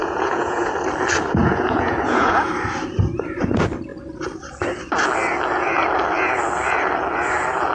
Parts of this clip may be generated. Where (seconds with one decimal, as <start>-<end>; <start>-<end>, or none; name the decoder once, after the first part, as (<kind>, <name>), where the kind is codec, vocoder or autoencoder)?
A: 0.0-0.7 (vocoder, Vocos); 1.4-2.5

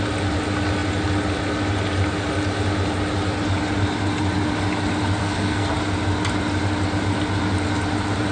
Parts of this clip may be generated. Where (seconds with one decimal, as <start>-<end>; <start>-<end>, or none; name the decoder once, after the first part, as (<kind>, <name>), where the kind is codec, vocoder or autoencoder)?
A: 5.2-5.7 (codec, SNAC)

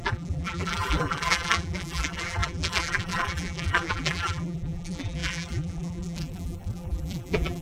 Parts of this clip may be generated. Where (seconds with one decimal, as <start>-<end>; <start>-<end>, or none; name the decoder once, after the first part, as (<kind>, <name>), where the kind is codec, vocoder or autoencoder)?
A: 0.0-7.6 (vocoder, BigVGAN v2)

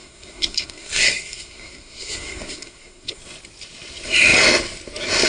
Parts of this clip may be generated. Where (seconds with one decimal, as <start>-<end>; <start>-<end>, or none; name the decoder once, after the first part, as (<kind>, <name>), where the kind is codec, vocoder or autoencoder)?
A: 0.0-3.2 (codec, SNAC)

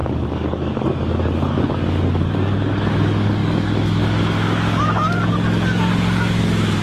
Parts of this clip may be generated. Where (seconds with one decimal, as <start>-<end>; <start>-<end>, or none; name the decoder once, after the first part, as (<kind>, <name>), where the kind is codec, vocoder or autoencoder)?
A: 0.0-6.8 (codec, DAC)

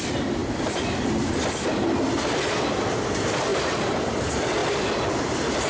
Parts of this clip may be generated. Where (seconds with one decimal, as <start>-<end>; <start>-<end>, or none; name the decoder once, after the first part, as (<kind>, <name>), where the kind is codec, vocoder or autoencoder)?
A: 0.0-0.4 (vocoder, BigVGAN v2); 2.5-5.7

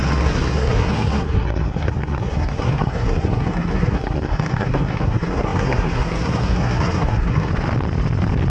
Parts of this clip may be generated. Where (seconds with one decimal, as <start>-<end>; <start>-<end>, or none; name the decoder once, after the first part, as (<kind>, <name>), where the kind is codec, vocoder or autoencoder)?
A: 0.0-7.5 (codec, SNAC)

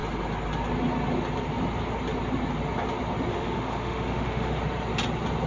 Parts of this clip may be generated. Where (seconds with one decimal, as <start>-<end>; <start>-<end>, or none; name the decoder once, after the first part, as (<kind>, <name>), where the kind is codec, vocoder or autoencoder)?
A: 3.3-4.6 (autoencoder, DAC-VAE)